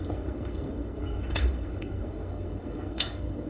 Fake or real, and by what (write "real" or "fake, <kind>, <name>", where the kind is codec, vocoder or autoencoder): fake, codec, SNAC